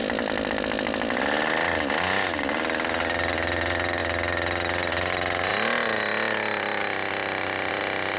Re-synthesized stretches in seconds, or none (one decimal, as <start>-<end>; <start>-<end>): none